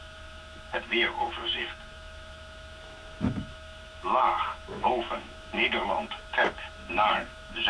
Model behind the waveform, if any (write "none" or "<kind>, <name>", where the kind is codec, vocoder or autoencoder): autoencoder, DAC-VAE